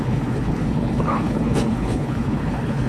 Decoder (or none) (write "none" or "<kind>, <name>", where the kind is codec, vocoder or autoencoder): codec, HILCodec